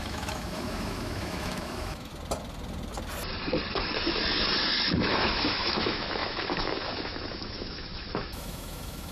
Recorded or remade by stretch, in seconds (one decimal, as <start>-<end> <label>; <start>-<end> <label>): 0.0-2.1 remade; 2.1-5.0 recorded; 5.0-9.1 remade